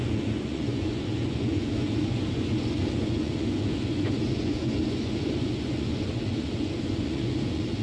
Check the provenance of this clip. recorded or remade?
remade